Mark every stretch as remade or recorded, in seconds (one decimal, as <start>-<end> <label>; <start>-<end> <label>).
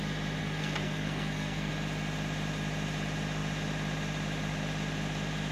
0.0-0.4 recorded; 0.4-1.7 remade; 1.7-5.5 recorded